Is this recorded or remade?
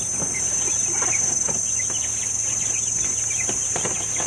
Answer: recorded